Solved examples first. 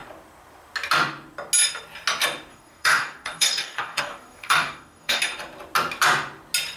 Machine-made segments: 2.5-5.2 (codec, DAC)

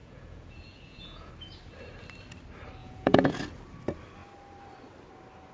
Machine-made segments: 0.0-1.3 (vocoder, Vocos); 2.8-3.4

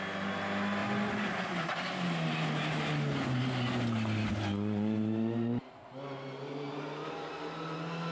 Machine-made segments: none

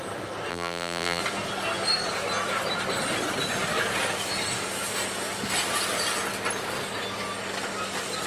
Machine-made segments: 0.5-1.2 (vocoder, BigVGAN v2)